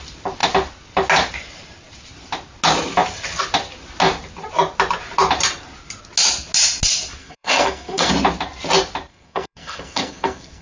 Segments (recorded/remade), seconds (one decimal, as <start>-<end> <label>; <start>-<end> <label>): 0.0-7.2 recorded; 7.2-8.1 remade; 8.1-9.1 recorded; 9.1-10.6 remade